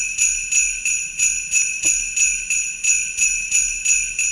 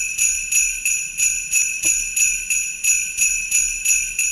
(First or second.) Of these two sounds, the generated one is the second